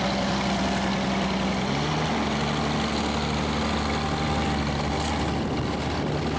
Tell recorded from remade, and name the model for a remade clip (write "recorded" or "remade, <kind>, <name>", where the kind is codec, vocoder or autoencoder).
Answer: recorded